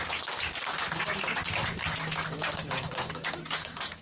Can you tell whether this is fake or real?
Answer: fake